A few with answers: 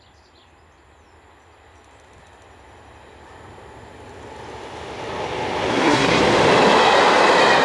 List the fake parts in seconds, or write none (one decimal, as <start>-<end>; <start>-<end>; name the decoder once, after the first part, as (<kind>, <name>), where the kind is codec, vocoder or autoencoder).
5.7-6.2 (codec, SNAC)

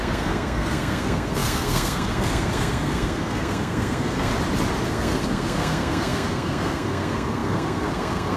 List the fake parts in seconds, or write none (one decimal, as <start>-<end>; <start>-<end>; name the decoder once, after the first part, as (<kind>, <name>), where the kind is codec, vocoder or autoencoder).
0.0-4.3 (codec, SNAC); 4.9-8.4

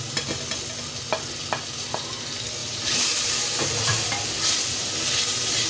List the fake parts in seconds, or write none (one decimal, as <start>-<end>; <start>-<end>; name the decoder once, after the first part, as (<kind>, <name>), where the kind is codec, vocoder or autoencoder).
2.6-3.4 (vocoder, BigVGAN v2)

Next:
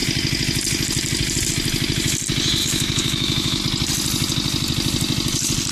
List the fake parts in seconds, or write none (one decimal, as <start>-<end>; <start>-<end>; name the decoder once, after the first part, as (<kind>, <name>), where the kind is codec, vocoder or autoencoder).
2.6-3.6 (autoencoder, DAC-VAE)

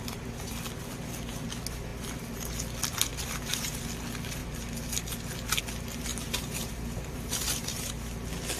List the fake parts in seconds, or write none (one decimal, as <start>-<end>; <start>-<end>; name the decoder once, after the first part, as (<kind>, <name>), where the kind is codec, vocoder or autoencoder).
3.1-3.8 (vocoder, BigVGAN v2); 6.1-7.9